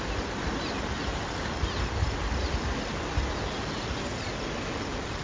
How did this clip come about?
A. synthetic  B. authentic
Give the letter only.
B